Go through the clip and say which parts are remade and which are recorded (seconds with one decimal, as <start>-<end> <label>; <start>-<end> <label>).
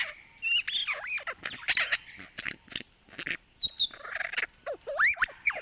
0.0-5.6 recorded